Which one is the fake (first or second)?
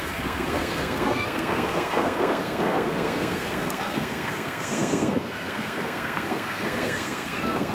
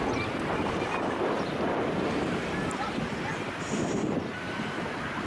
first